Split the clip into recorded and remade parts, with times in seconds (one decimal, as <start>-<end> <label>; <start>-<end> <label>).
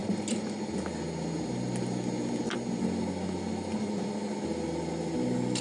0.0-5.6 recorded